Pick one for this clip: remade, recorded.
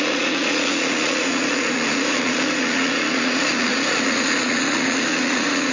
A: remade